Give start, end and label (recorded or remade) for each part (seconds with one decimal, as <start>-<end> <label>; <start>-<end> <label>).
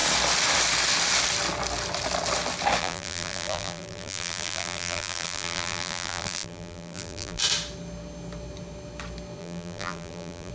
0.0-2.8 recorded; 2.8-7.4 remade; 7.4-9.4 recorded; 9.4-10.5 remade